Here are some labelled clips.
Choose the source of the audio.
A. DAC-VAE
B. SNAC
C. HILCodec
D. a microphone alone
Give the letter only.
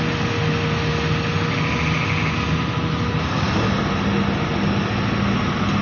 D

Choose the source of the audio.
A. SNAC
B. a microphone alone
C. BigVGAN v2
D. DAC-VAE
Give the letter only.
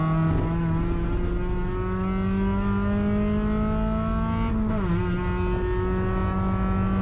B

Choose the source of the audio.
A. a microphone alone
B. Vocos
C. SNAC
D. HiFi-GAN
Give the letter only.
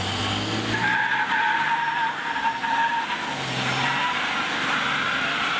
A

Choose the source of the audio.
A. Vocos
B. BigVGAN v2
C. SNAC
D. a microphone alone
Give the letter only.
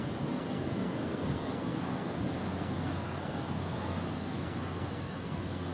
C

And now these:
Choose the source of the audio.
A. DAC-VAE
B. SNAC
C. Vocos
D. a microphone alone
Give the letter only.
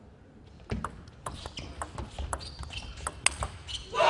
D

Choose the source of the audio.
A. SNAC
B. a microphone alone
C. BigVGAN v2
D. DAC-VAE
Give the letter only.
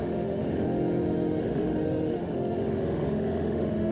D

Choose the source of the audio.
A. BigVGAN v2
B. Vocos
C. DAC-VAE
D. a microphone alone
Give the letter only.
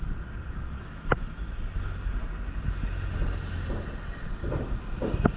D